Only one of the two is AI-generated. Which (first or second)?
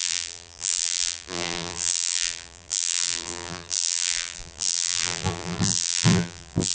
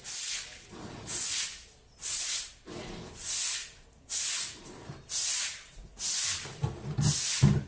first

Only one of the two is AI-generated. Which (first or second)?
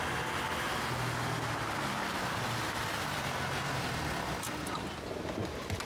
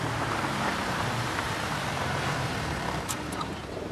second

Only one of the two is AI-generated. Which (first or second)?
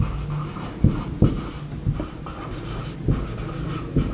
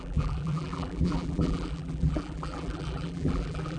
second